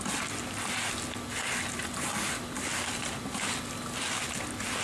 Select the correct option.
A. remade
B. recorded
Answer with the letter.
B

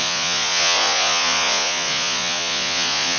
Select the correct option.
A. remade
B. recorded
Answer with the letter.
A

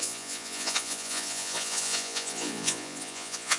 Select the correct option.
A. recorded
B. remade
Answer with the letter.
B